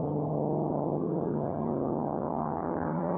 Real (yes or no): no